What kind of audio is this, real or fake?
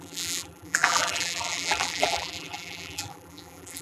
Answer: fake